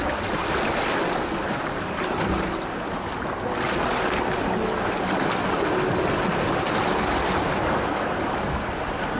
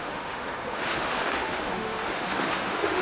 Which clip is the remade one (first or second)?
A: second